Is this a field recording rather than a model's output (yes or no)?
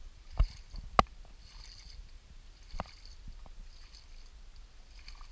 yes